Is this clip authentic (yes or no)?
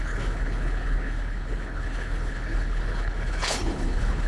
no